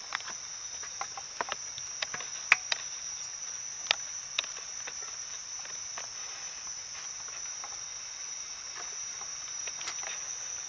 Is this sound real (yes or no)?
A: yes